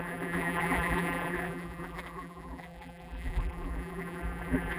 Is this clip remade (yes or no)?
yes